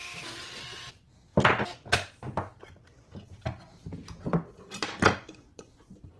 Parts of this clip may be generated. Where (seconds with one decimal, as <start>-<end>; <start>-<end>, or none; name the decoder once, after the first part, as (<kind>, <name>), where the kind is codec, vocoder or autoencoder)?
0.9-1.3 (vocoder, Vocos); 5.0-6.2